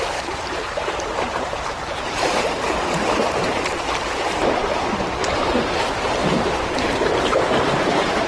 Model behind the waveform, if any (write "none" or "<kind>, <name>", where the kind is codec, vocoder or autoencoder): vocoder, BigVGAN v2